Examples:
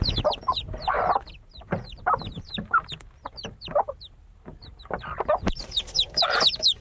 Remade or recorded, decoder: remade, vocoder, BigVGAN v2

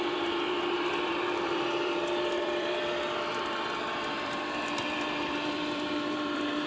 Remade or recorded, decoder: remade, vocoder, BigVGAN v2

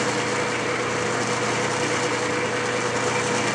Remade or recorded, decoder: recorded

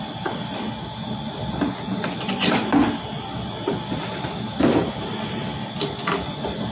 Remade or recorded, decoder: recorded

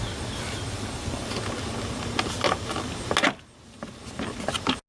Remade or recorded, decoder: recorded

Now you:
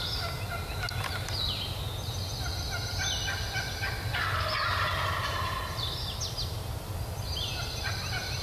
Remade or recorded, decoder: recorded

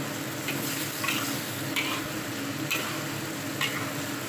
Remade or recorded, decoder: recorded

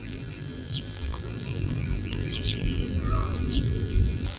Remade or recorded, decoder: remade, vocoder, BigVGAN v2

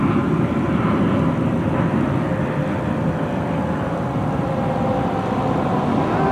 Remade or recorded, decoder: remade, vocoder, BigVGAN v2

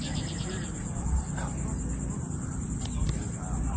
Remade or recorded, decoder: recorded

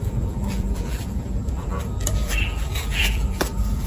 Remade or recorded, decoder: remade, vocoder, BigVGAN v2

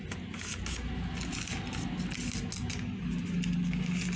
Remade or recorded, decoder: recorded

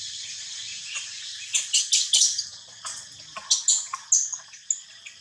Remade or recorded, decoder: recorded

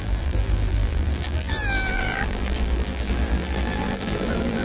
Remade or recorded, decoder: remade, vocoder, BigVGAN v2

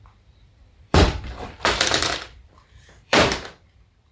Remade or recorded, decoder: remade, vocoder, BigVGAN v2